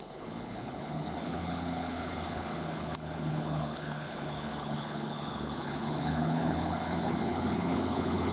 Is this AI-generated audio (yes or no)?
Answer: yes